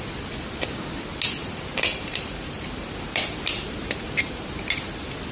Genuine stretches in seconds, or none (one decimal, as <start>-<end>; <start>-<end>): 0.0-1.4; 4.6-5.3